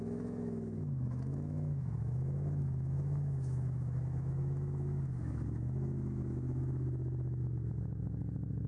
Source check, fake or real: fake